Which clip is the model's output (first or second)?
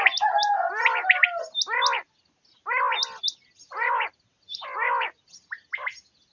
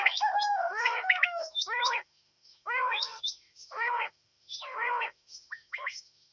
second